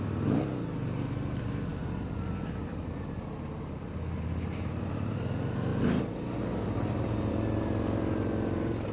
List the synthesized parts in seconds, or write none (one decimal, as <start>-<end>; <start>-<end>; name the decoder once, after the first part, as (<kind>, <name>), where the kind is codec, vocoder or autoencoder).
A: none